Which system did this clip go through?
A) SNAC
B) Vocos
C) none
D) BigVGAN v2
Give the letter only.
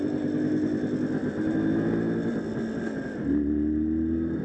C